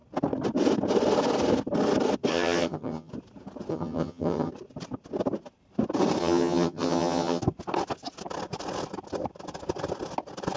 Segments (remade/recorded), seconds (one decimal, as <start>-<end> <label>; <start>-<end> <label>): 0.0-2.3 recorded; 2.3-3.1 remade; 3.1-3.7 recorded; 3.7-4.5 remade; 4.5-6.2 recorded; 6.2-7.4 remade; 7.4-10.6 recorded